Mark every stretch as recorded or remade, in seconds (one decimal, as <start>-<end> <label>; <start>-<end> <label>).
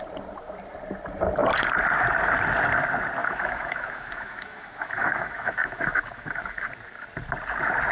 0.0-3.2 recorded; 3.2-6.7 remade; 6.7-7.9 recorded